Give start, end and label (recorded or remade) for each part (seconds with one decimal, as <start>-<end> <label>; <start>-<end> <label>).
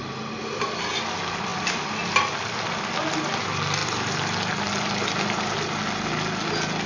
0.0-6.9 recorded